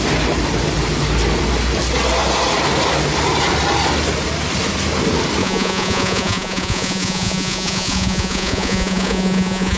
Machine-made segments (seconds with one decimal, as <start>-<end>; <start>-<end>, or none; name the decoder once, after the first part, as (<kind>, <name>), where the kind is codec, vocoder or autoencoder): 5.4-9.8 (vocoder, Vocos)